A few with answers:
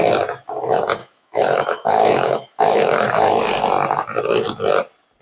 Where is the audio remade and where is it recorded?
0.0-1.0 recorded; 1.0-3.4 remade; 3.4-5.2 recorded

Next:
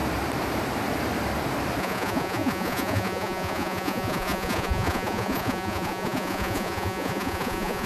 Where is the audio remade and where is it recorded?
0.0-1.8 recorded; 1.8-7.9 remade

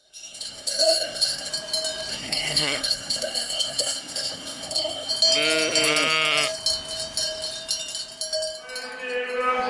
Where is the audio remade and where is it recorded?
0.0-1.5 remade; 1.5-2.1 recorded; 2.1-5.1 remade; 5.1-9.7 recorded

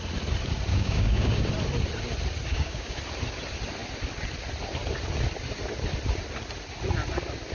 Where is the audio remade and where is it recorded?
0.0-0.7 recorded; 0.7-1.5 remade; 1.5-2.5 recorded; 2.5-3.0 remade; 3.0-7.5 recorded

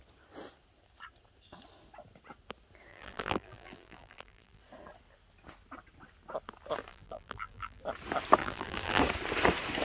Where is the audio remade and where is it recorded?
0.0-2.9 recorded; 2.9-4.6 remade; 4.6-6.9 recorded; 6.9-7.8 remade; 7.8-8.4 recorded; 8.4-9.0 remade; 9.0-9.8 recorded

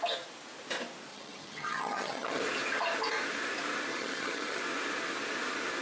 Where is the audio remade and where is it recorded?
0.0-1.1 recorded; 1.1-2.4 remade; 2.4-3.9 recorded; 3.9-4.6 remade; 4.6-5.8 recorded